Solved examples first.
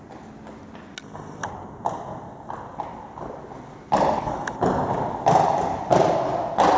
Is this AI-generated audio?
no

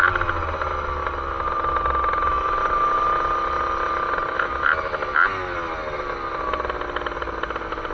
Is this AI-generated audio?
no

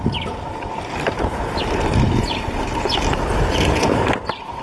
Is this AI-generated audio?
no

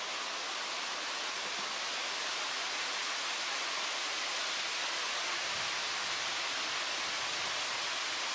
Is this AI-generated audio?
no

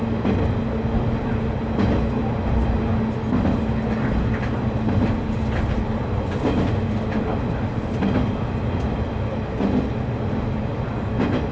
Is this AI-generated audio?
no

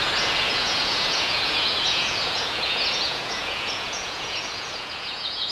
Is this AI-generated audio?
yes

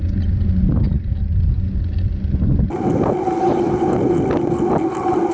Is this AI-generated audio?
no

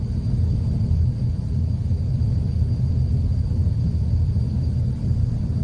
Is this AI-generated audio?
no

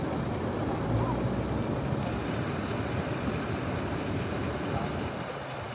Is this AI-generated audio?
no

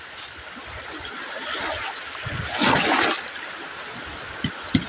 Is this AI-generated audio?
no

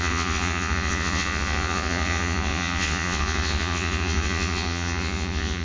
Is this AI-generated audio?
yes